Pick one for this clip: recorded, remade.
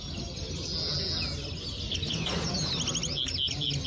recorded